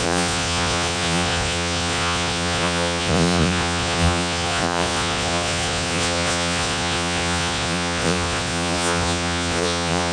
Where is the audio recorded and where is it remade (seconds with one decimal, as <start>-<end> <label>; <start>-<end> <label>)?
0.0-10.1 remade